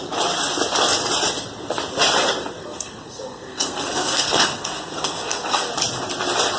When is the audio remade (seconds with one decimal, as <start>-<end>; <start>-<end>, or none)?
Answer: 2.6-5.7